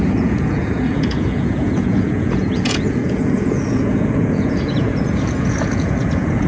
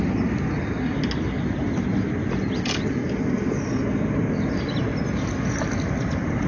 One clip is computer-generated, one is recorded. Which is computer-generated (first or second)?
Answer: first